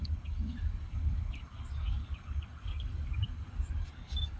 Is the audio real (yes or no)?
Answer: no